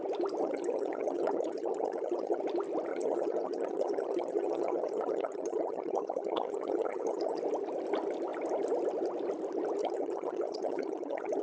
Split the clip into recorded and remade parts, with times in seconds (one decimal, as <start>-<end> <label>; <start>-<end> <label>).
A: 0.0-0.4 recorded; 0.4-2.4 remade; 2.4-2.9 recorded; 2.9-7.4 remade; 7.4-9.8 recorded; 9.8-11.4 remade

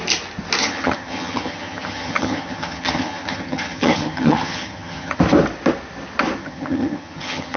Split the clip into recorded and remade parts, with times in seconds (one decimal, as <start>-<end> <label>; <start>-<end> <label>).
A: 0.0-0.6 recorded; 0.6-5.2 remade; 5.2-6.4 recorded; 6.4-7.6 remade

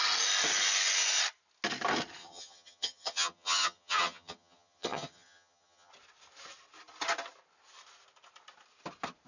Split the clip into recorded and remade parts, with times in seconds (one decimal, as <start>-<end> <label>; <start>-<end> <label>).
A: 0.0-2.2 recorded; 2.2-5.9 remade; 5.9-9.3 recorded

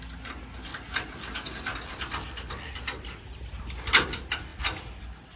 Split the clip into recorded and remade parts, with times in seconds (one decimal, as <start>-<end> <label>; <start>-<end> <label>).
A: 0.0-5.4 recorded

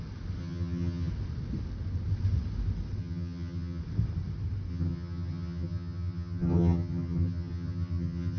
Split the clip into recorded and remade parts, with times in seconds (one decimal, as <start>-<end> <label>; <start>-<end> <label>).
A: 0.0-0.4 recorded; 0.4-1.1 remade; 1.1-3.0 recorded; 3.0-3.8 remade; 3.8-4.7 recorded; 4.7-8.4 remade

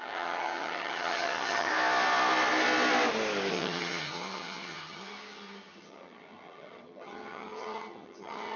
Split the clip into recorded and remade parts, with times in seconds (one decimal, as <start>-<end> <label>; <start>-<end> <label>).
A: 0.0-1.7 remade; 1.7-3.5 recorded; 3.5-8.6 remade